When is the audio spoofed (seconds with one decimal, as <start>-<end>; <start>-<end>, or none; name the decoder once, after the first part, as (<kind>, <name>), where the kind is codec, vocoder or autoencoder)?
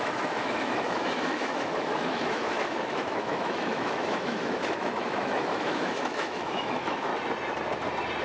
0.0-7.1 (autoencoder, DAC-VAE)